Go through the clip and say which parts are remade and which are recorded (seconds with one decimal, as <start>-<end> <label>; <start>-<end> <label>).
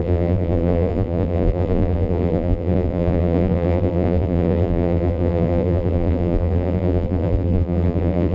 0.0-8.3 remade